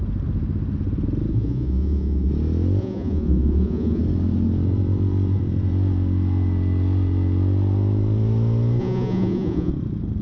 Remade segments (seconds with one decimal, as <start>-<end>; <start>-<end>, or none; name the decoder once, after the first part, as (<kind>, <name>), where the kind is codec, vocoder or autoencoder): 1.3-2.3 (vocoder, Vocos); 2.8-4.0; 8.8-9.7